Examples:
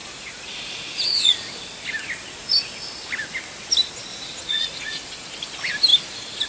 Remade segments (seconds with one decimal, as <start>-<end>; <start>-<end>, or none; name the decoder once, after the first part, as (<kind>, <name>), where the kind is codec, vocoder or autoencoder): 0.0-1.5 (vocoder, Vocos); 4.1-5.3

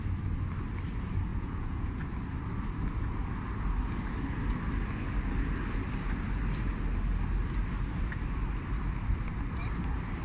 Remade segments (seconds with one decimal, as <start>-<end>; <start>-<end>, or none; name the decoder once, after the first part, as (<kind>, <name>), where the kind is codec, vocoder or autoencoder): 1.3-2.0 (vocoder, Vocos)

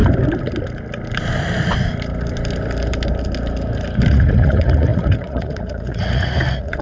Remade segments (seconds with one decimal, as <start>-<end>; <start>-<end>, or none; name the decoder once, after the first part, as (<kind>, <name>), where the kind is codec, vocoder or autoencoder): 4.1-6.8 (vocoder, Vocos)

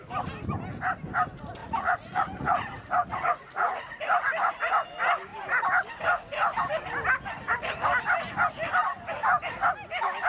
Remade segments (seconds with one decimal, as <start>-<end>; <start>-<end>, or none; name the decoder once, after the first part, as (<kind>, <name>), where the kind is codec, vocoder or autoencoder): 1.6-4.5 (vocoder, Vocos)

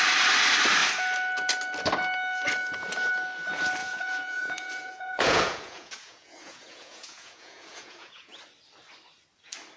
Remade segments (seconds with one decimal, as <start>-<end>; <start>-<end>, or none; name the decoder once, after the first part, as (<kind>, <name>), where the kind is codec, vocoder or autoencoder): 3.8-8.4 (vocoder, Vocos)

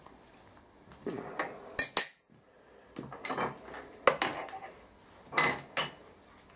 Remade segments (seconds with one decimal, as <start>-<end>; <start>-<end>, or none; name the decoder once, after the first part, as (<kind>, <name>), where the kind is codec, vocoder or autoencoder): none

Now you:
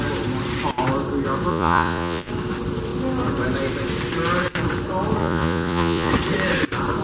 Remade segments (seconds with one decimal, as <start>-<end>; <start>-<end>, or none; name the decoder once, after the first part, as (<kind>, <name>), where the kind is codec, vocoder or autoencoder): 1.5-2.3 (vocoder, Vocos); 5.2-6.1